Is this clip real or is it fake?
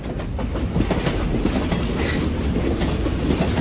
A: real